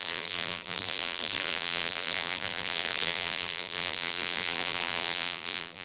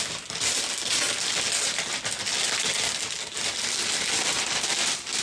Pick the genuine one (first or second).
second